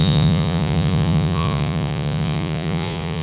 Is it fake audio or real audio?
fake